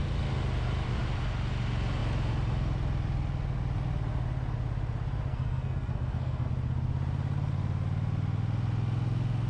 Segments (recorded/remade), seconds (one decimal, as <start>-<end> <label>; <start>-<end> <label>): 0.0-5.3 recorded; 5.3-6.5 remade; 6.5-9.5 recorded